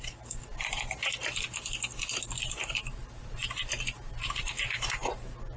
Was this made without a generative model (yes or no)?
yes